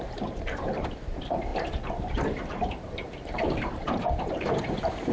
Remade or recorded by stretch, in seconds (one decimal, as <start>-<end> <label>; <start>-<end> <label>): 0.0-5.1 remade